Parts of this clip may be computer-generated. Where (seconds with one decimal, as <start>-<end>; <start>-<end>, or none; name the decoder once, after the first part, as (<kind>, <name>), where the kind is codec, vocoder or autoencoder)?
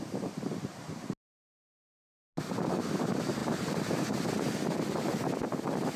3.4-4.2 (vocoder, BigVGAN v2)